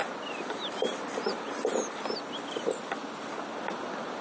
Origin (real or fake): real